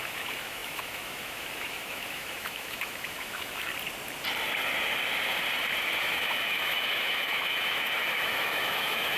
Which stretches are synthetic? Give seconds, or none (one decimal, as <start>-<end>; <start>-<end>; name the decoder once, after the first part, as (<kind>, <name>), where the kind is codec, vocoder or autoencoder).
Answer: 0.0-3.7 (autoencoder, DAC-VAE); 6.0-9.2